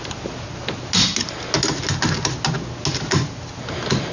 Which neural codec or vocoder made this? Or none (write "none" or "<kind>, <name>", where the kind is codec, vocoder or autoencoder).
none